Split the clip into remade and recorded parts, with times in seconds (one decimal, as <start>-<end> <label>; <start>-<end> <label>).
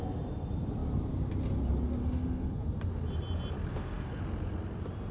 0.0-2.0 recorded; 2.0-2.6 remade; 2.6-3.7 recorded; 3.7-4.2 remade; 4.2-5.1 recorded